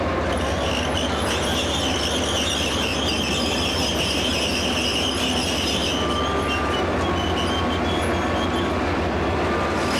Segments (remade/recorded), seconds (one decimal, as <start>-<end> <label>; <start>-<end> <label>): 0.0-10.0 recorded